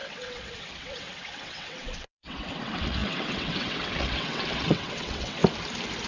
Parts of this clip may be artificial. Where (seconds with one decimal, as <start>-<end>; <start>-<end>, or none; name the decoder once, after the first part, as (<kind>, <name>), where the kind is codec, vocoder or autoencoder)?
0.0-5.4 (vocoder, WaveNeXt)